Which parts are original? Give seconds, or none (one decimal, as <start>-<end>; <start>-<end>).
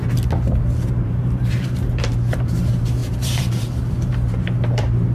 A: 0.0-0.9